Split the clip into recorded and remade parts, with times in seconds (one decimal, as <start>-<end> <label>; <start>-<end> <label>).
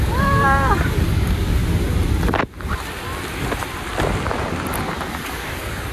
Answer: 0.0-1.6 remade; 1.6-5.1 recorded; 5.1-5.9 remade